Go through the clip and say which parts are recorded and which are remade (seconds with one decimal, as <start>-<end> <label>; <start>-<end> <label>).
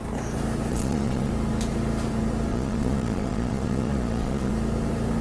0.0-0.7 recorded; 0.7-1.3 remade; 1.3-2.5 recorded; 2.5-4.5 remade; 4.5-5.2 recorded